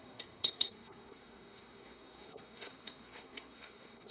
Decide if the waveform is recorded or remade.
remade